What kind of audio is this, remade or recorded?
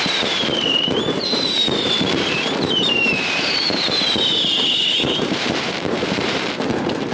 remade